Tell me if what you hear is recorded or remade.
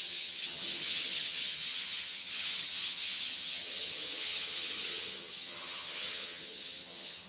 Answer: remade